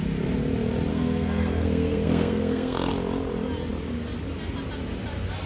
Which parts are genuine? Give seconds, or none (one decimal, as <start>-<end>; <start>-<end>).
0.0-0.9; 2.9-5.5